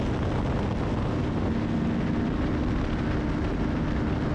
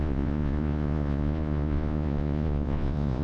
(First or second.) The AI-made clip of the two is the second